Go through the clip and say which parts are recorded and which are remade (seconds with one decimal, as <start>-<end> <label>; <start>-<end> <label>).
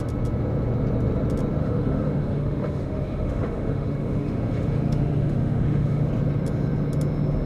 0.0-1.6 recorded; 1.6-6.1 remade; 6.1-7.5 recorded